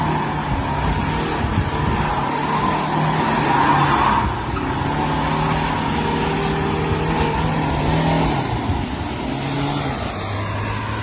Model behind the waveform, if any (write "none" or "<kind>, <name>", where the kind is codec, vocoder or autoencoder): none